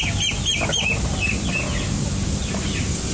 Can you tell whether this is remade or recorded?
recorded